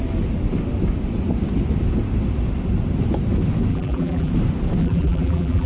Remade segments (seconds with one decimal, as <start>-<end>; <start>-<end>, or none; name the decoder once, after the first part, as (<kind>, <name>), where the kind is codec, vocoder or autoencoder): 3.7-4.3 (vocoder, BigVGAN v2); 4.8-5.7